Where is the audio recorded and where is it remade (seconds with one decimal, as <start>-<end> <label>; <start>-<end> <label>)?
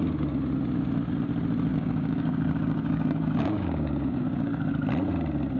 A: 0.0-1.7 recorded; 1.7-4.7 remade; 4.7-5.6 recorded